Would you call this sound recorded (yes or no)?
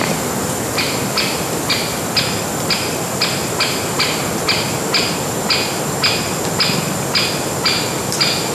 yes